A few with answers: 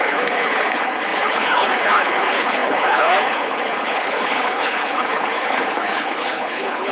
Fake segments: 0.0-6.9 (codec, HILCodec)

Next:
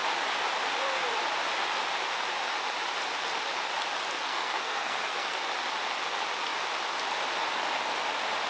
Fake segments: 4.2-5.5 (codec, SNAC)